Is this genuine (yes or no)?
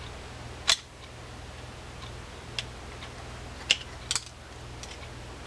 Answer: yes